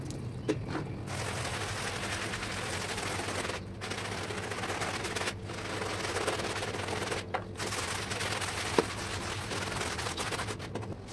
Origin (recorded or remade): recorded